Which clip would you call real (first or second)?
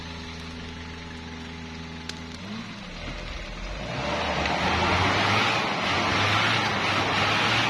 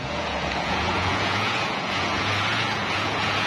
first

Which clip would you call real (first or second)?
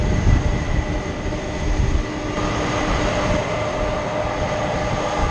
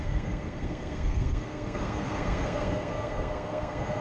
first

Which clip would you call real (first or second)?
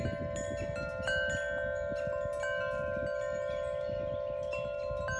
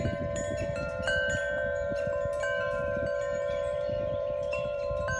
first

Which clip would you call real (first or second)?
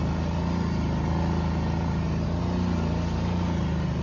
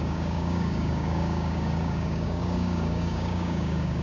first